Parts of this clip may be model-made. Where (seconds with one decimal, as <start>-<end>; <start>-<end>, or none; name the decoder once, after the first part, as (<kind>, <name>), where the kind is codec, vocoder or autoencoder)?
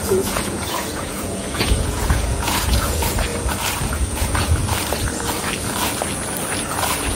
0.0-3.3 (vocoder, Vocos); 3.9-4.6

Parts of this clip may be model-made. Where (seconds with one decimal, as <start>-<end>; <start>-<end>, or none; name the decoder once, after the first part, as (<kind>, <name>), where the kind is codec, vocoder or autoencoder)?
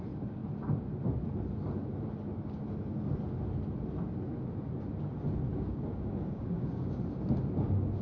5.5-6.9 (codec, DAC)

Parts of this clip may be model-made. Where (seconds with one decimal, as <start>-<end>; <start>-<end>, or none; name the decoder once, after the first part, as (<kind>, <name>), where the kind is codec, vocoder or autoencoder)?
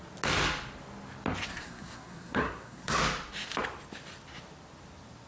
1.5-3.0 (codec, SNAC)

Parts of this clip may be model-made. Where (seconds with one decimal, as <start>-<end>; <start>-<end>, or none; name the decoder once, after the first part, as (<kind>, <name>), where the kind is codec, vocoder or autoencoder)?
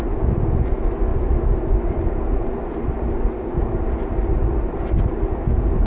none